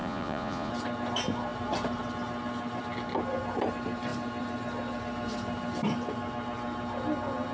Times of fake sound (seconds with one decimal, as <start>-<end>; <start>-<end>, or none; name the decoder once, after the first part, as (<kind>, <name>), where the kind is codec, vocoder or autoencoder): 0.0-0.7 (vocoder, Vocos)